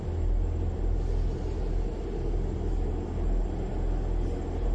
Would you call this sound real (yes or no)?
yes